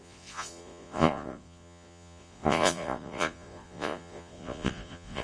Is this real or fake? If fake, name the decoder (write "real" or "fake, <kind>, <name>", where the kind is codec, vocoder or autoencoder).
fake, vocoder, Vocos